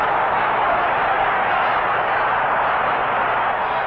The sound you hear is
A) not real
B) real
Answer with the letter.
B